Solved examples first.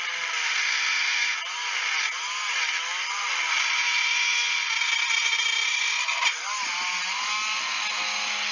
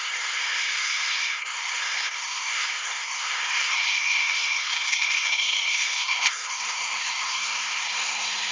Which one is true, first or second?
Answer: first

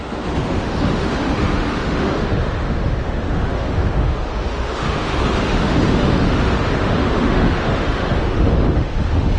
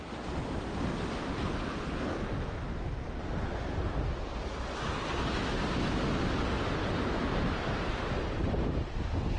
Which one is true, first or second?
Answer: second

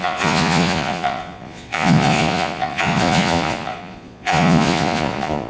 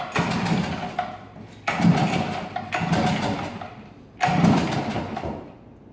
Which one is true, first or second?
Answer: second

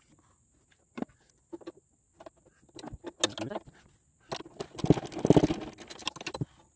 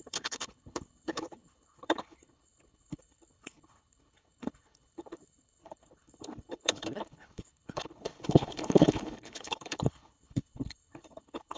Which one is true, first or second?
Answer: first